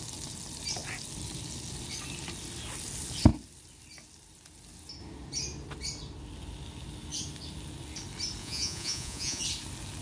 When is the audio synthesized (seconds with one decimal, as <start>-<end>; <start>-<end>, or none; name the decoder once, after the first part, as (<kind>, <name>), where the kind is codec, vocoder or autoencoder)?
8.4-9.4 (vocoder, Vocos)